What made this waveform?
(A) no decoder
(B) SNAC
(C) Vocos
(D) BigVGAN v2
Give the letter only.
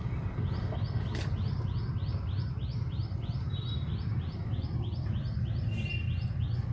A